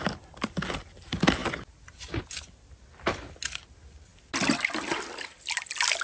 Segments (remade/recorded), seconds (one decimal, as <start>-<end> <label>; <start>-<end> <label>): 0.0-6.0 recorded